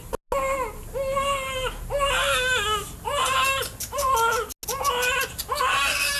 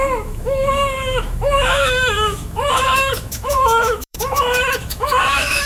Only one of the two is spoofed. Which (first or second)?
second